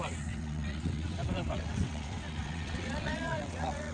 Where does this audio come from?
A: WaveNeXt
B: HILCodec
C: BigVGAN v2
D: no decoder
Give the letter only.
A